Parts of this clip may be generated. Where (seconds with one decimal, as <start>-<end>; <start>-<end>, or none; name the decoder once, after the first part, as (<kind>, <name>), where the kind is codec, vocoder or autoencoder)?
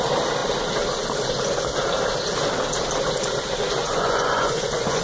3.8-5.0 (vocoder, Vocos)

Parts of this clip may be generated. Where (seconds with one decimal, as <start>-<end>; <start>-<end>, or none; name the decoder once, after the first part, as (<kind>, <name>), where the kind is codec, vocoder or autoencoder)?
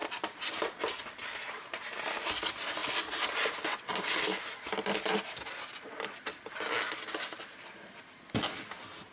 none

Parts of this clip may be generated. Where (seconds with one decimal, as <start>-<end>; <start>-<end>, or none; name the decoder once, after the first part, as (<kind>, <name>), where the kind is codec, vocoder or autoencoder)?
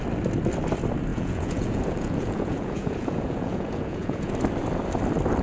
1.1-4.3 (vocoder, Vocos)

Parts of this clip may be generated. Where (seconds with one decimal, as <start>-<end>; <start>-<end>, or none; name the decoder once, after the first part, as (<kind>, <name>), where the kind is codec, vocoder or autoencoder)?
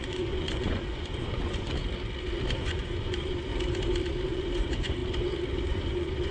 0.0-1.8 (vocoder, Vocos); 2.6-3.5; 4.3-5.0; 5.6-6.3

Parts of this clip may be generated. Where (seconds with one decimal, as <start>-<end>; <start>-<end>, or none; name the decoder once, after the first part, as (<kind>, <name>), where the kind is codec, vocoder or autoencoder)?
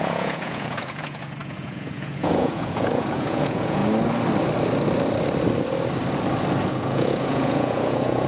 0.0-3.8 (vocoder, Vocos); 6.7-8.3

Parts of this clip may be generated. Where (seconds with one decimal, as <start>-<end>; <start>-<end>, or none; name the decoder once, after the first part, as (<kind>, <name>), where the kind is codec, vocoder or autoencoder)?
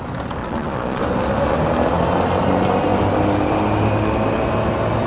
0.4-1.0 (vocoder, Vocos)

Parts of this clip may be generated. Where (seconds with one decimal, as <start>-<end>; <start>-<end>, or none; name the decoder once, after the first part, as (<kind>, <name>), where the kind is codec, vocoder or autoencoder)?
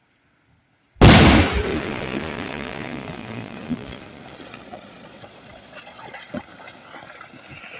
1.7-6.4 (vocoder, Vocos)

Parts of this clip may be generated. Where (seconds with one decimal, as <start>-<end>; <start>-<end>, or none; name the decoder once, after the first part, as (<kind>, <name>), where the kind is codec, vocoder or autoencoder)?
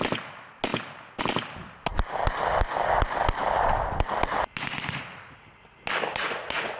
6.1-6.8 (vocoder, Vocos)